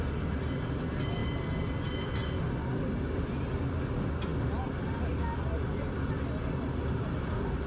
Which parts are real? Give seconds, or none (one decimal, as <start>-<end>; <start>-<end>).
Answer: 0.0-7.7